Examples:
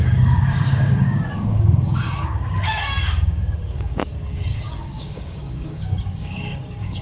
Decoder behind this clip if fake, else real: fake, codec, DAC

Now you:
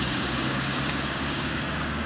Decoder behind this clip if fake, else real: fake, codec, DAC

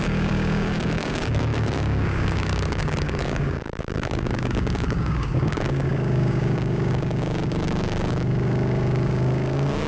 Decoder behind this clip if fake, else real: fake, codec, DAC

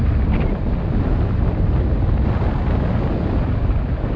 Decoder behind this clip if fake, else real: real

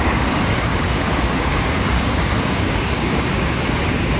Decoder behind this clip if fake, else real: fake, codec, DAC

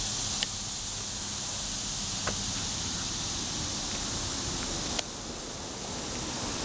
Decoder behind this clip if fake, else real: real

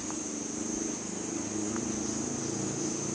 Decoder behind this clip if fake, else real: real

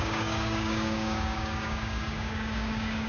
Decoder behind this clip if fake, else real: fake, codec, DAC